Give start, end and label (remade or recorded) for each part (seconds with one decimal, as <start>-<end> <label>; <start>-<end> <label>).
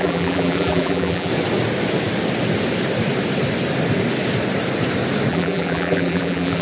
0.0-1.3 remade; 1.3-5.3 recorded; 5.3-6.6 remade